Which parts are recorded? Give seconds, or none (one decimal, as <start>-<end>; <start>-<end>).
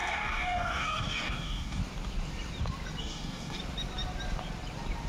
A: 1.8-3.0; 3.6-5.1